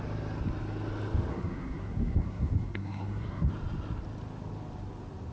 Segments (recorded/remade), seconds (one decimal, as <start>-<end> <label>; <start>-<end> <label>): 0.0-1.3 recorded; 1.3-3.5 remade; 3.5-5.3 recorded